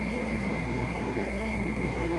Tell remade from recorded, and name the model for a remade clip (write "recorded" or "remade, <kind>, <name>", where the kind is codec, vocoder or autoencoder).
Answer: remade, codec, SNAC